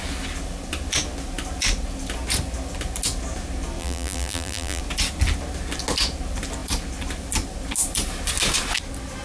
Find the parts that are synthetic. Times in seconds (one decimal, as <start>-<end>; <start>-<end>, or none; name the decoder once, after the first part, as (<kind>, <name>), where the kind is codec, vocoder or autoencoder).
3.8-4.8 (vocoder, BigVGAN v2)